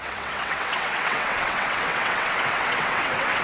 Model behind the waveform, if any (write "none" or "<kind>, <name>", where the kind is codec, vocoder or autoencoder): vocoder, WaveNeXt